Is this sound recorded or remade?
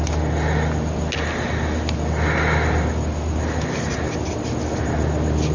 recorded